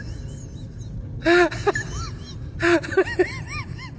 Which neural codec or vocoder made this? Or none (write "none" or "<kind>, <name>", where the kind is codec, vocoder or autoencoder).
none